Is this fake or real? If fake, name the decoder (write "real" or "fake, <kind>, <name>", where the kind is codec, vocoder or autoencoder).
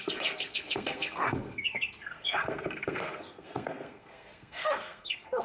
fake, codec, SNAC